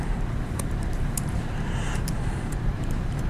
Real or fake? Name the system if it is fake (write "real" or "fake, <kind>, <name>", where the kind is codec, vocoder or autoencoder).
fake, vocoder, BigVGAN v2